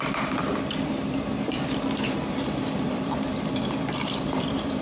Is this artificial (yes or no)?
yes